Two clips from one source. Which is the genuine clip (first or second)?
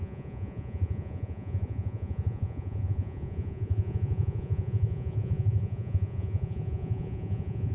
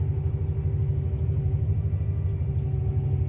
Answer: second